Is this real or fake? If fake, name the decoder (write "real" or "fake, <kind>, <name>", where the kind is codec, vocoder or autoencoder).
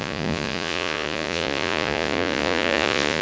fake, vocoder, Vocos